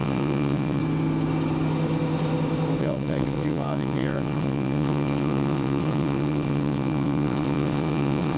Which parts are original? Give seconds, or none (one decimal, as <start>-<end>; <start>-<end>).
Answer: 0.8-2.8